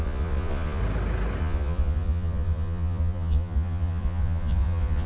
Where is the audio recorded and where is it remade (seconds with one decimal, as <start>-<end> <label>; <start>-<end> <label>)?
0.0-0.8 remade; 0.8-1.4 recorded; 1.4-5.1 remade